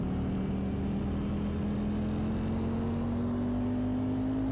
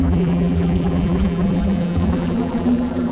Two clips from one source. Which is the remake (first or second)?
second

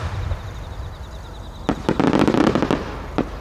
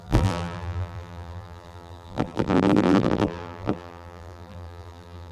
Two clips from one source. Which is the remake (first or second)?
second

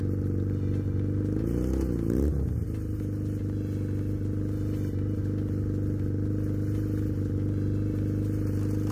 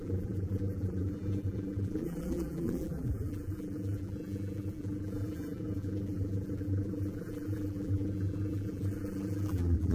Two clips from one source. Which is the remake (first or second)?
second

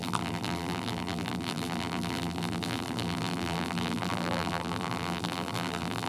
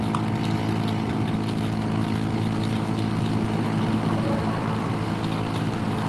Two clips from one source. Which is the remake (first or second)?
first